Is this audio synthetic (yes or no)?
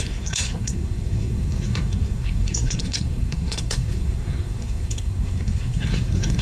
yes